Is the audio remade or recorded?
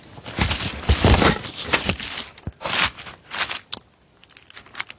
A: recorded